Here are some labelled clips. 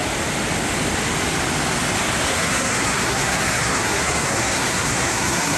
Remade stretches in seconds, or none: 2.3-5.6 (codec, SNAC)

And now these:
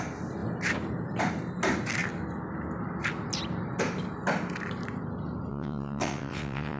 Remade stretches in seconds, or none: 5.5-6.8 (vocoder, WaveNeXt)

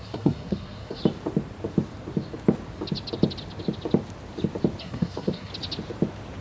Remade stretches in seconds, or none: 0.0-1.0 (codec, SNAC); 4.8-5.5

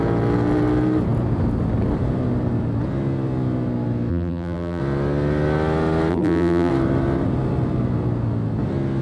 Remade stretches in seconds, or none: 4.1-4.8 (vocoder, BigVGAN v2); 6.1-6.7